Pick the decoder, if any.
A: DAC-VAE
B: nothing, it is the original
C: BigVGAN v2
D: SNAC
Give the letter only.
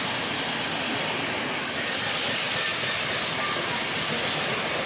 B